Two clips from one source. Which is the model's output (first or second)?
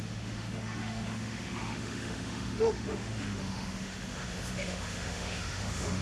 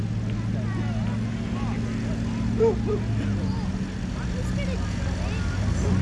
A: first